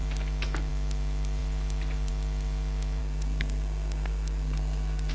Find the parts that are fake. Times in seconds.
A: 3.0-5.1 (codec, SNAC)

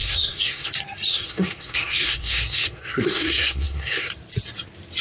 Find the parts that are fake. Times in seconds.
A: 0.0-0.7 (codec, SNAC); 1.1-4.1

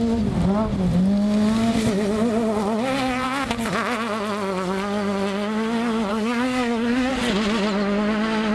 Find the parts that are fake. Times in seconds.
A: 6.1-7.1 (codec, SNAC)

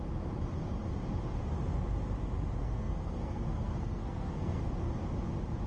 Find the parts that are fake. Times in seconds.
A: 2.6-4.7 (codec, SNAC)

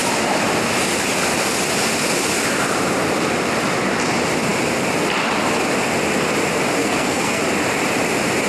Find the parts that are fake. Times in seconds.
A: 6.8-7.4 (codec, SNAC)

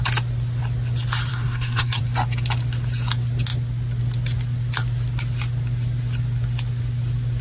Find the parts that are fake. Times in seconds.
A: 1.3-2.0 (codec, SNAC)